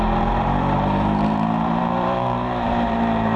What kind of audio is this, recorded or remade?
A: remade